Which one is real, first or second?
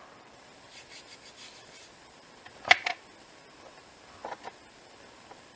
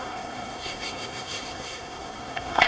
first